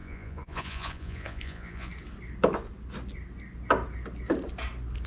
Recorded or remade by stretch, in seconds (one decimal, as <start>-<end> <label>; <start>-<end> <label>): 0.0-1.9 remade; 1.9-5.1 recorded